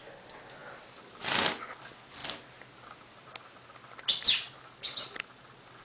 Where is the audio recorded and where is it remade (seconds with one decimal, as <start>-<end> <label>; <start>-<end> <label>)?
0.0-5.8 recorded